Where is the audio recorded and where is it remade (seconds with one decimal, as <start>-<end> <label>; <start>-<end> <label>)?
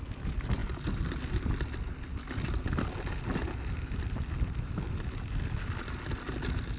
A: 0.0-6.8 recorded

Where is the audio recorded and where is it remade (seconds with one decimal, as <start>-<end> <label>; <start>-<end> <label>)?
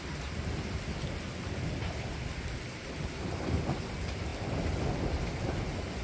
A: 0.0-6.0 recorded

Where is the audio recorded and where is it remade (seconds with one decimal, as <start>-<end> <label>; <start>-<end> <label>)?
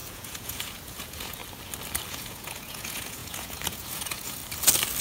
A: 0.0-1.4 remade; 1.4-2.1 recorded; 2.1-4.4 remade; 4.4-5.0 recorded